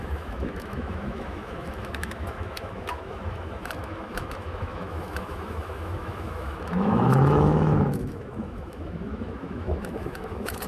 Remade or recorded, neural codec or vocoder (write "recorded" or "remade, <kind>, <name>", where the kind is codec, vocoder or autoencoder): remade, autoencoder, DAC-VAE